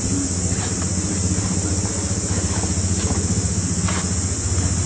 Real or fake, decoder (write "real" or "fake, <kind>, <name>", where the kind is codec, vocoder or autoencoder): real